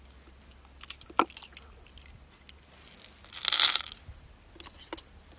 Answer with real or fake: real